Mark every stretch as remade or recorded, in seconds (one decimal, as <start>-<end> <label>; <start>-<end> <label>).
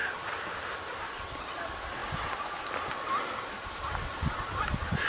0.0-0.5 remade; 0.5-5.1 recorded